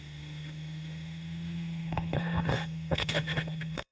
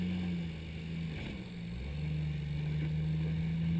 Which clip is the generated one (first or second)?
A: first